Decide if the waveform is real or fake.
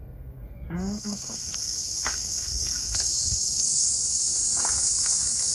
fake